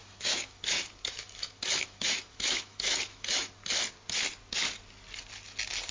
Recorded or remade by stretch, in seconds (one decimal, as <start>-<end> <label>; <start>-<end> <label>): 0.0-3.5 remade; 3.5-5.9 recorded